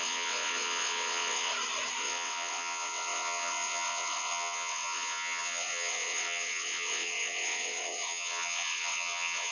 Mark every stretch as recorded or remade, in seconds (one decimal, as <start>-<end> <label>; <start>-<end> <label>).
0.0-1.5 remade; 1.5-2.0 recorded; 2.0-9.5 remade